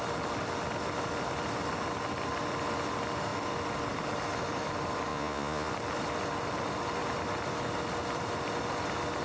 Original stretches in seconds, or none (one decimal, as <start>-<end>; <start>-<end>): 0.0-5.1; 5.7-9.2